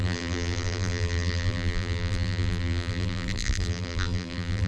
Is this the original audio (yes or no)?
no